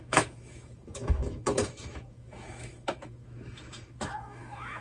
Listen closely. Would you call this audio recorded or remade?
remade